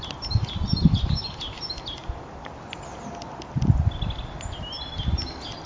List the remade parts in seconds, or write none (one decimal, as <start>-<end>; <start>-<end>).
none